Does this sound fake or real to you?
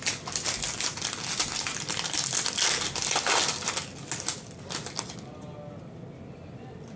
real